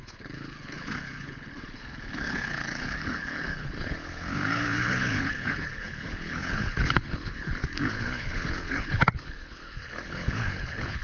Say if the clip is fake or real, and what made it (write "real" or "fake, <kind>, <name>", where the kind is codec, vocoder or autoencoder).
fake, codec, HILCodec